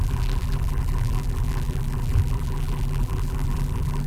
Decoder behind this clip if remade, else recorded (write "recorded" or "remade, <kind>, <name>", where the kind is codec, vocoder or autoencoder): remade, vocoder, BigVGAN v2